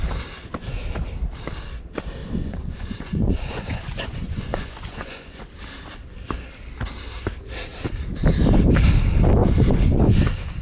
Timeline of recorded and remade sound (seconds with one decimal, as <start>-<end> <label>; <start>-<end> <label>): 0.0-2.2 recorded; 2.2-5.4 remade; 5.4-9.4 recorded; 9.4-10.0 remade; 10.0-10.6 recorded